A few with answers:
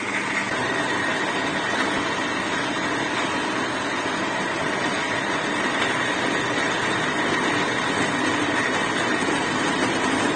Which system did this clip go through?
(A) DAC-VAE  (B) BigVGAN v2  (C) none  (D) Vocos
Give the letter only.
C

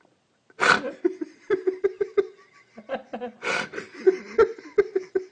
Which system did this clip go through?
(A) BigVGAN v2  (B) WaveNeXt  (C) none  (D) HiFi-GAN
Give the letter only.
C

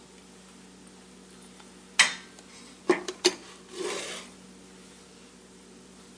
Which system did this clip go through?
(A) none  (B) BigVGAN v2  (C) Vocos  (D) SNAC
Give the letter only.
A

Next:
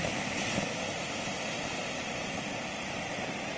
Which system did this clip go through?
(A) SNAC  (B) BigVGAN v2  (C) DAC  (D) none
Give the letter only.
D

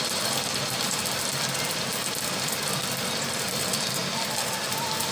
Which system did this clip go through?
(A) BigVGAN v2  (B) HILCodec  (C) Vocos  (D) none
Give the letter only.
A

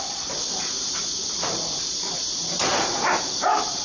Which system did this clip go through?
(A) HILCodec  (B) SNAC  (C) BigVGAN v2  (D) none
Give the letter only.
D